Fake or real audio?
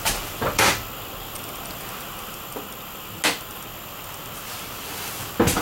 real